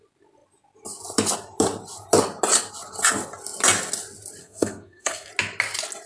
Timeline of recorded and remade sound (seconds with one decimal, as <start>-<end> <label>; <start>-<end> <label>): 0.0-4.4 recorded; 4.4-5.3 remade; 5.3-6.1 recorded